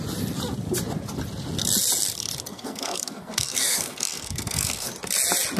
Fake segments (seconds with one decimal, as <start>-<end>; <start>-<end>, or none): 2.5-4.9